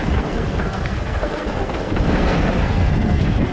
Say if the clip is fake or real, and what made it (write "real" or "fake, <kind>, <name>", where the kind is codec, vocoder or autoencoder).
fake, codec, SNAC